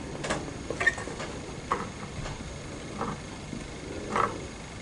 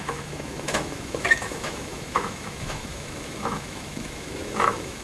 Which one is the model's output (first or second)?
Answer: second